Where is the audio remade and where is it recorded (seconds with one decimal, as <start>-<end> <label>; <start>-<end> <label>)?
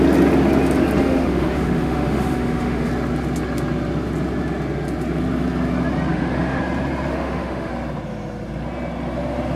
0.0-1.0 recorded; 1.0-2.9 remade; 2.9-6.1 recorded; 6.1-6.6 remade; 6.6-7.1 recorded; 7.1-7.7 remade; 7.7-9.6 recorded